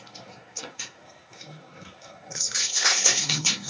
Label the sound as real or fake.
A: fake